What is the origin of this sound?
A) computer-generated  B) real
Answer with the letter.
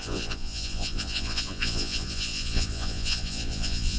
A